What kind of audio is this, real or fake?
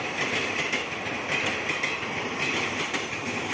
real